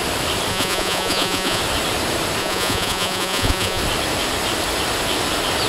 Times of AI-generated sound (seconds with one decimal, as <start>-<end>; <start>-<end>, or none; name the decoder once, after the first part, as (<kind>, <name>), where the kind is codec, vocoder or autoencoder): 0.5-1.6 (vocoder, Vocos); 2.4-3.8